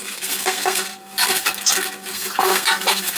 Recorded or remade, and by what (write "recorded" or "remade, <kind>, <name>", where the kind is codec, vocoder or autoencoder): remade, codec, SNAC